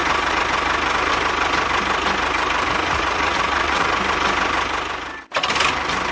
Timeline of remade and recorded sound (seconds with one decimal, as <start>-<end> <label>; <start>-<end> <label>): 0.0-2.8 recorded; 2.8-3.9 remade; 3.9-6.1 recorded

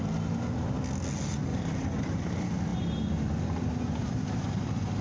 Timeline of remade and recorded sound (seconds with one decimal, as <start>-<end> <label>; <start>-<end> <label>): 0.0-1.5 recorded; 1.5-2.3 remade; 2.3-5.0 recorded

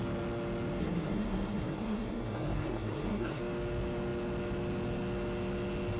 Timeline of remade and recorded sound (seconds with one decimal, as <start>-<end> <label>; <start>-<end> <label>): 0.0-0.8 recorded; 0.8-3.4 remade; 3.4-6.0 recorded

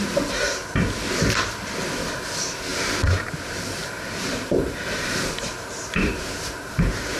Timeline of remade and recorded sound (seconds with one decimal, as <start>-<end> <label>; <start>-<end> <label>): 0.0-2.7 recorded; 2.7-7.2 remade